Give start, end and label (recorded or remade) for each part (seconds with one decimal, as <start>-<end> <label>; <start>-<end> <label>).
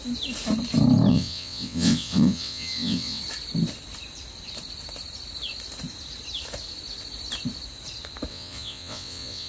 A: 0.0-1.1 recorded; 1.1-3.2 remade; 3.2-8.3 recorded; 8.3-9.5 remade